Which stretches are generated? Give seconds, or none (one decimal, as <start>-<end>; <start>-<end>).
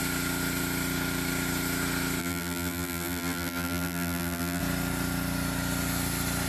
2.2-4.6